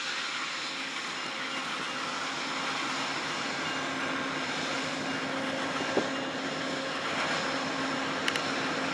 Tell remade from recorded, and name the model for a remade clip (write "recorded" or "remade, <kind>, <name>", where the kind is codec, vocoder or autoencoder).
recorded